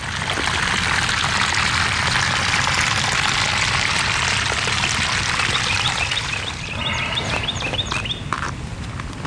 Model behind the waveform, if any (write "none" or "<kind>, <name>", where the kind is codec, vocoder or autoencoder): none